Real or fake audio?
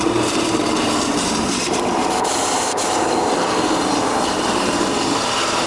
fake